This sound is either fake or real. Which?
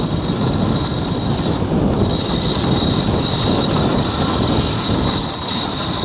fake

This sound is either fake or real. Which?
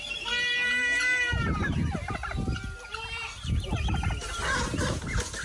real